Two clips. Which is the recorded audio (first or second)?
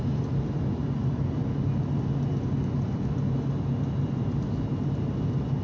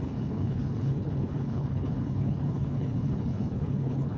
first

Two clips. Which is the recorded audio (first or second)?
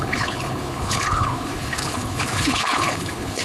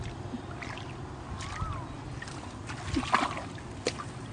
second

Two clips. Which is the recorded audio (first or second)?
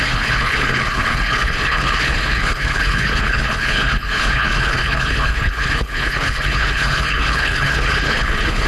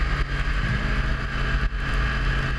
second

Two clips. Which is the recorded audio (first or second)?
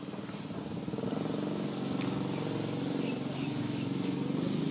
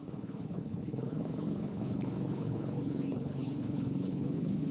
first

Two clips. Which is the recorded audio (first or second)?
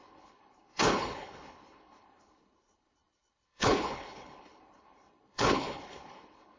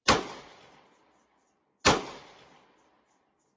second